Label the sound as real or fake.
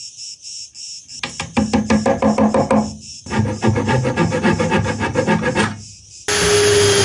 real